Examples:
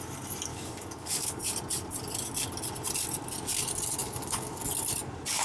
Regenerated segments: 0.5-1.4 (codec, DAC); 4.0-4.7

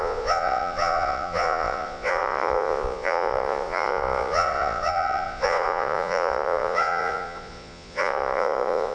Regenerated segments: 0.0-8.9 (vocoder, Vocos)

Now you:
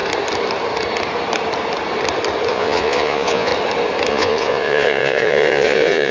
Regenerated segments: 2.5-3.5 (vocoder, Vocos); 4.1-6.1

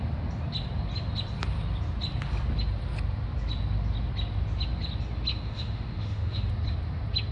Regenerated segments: 5.3-6.5 (autoencoder, DAC-VAE)

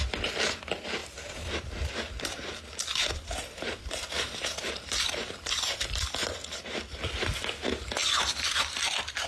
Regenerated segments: 1.0-1.7 (vocoder, BigVGAN v2); 2.9-7.4; 8.0-9.3

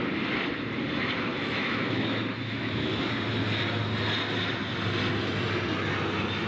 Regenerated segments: 1.3-3.1 (autoencoder, DAC-VAE)

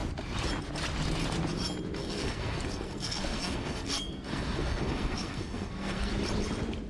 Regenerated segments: 2.0-6.1 (codec, SNAC)